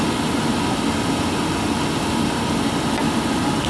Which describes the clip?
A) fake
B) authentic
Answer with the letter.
B